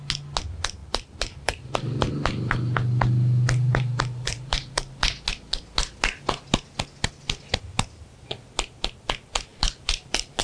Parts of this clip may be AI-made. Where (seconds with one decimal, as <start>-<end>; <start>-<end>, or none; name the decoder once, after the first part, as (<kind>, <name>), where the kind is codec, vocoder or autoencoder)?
0.8-2.1 (vocoder, BigVGAN v2); 3.7-5.0; 9.5-10.4